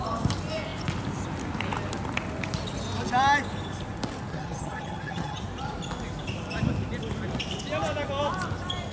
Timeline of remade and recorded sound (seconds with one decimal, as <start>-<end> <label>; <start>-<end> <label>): 0.0-4.3 recorded; 4.3-5.4 remade; 5.4-8.9 recorded